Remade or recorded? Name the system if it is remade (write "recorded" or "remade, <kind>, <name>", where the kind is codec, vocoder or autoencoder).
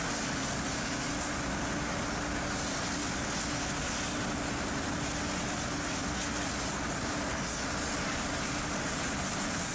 recorded